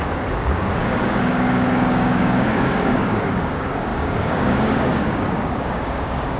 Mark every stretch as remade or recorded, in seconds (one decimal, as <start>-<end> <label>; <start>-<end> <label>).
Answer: 0.0-6.4 remade